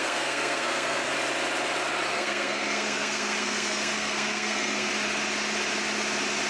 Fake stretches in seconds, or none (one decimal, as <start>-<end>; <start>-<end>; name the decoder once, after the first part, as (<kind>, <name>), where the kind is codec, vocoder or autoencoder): 0.0-1.1 (codec, SNAC); 2.1-4.9